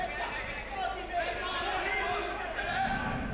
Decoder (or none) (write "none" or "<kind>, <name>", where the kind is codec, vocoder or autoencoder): none